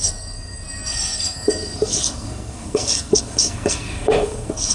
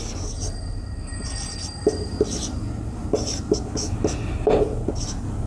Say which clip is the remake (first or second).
first